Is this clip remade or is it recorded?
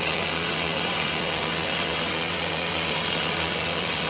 remade